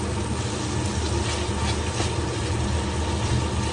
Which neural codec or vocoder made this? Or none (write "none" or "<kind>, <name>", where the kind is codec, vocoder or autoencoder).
none